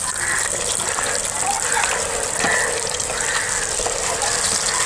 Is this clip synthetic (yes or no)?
no